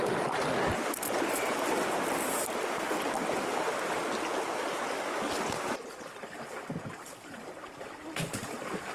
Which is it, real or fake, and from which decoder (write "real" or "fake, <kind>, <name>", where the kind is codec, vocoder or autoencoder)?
real